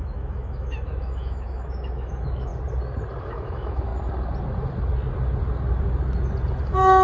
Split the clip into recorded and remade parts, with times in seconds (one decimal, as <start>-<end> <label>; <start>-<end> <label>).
0.0-2.5 remade; 2.5-3.2 recorded; 3.2-3.9 remade; 3.9-6.6 recorded; 6.6-7.0 remade